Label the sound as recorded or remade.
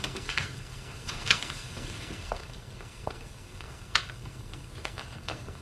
remade